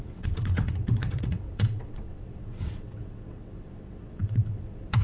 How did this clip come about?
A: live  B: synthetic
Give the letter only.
B